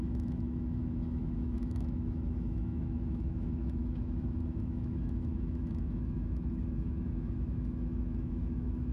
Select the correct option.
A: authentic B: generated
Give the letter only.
B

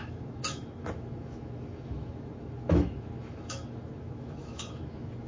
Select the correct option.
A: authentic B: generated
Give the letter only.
B